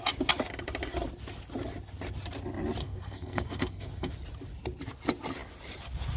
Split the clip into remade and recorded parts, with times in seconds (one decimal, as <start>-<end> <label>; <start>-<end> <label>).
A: 0.0-2.8 recorded; 2.8-4.1 remade; 4.1-6.2 recorded

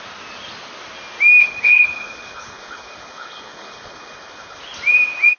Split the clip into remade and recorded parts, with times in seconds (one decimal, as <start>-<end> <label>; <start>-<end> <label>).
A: 0.0-1.4 recorded; 1.4-4.6 remade; 4.6-5.4 recorded

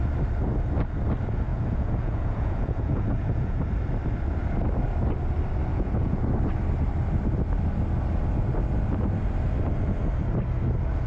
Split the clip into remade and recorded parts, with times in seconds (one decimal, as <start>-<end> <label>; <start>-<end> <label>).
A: 0.0-1.5 recorded; 1.5-3.6 remade; 3.6-5.7 recorded; 5.7-6.3 remade; 6.3-11.1 recorded

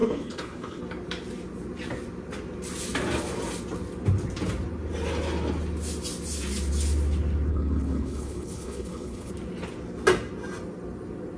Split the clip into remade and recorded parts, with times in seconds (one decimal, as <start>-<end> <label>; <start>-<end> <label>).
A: 0.0-0.8 remade; 0.8-7.5 recorded; 7.5-9.3 remade; 9.3-11.4 recorded

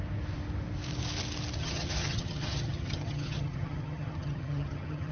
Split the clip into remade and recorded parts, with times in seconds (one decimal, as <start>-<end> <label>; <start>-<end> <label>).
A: 0.0-1.6 recorded; 1.6-5.1 remade

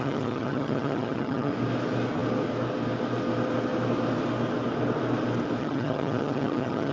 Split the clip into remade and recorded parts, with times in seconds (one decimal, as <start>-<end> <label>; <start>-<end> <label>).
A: 0.0-1.5 remade; 1.5-5.6 recorded; 5.6-6.9 remade